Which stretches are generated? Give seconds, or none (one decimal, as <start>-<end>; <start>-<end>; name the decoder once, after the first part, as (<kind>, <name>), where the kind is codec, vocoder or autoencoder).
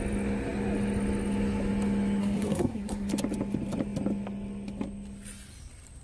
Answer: 2.2-3.1 (codec, SNAC)